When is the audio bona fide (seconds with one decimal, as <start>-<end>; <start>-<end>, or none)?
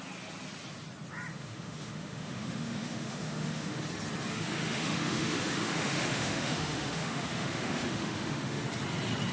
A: 0.0-1.3; 3.8-4.3; 8.6-9.3